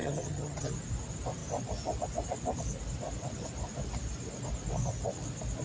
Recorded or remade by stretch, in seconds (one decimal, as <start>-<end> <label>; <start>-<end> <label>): 0.0-0.7 remade; 0.7-5.6 recorded